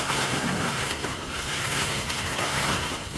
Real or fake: fake